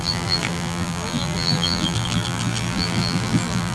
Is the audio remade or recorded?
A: remade